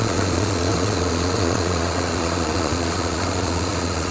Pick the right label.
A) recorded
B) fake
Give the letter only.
B